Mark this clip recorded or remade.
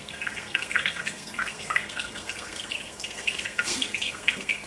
remade